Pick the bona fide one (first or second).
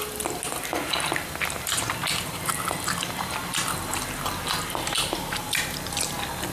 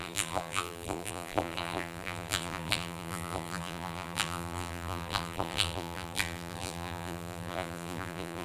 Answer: first